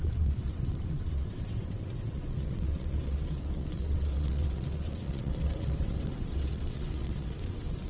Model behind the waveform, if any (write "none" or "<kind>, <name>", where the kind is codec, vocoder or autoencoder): vocoder, WaveNeXt